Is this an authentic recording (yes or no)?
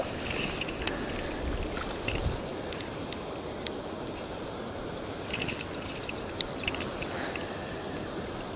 yes